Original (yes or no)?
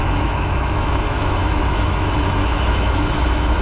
no